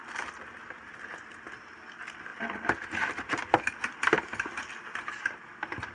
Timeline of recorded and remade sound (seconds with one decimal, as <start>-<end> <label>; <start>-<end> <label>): 0.0-5.9 recorded